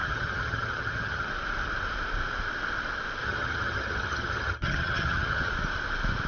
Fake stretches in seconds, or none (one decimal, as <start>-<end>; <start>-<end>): 0.0-1.3; 3.2-5.5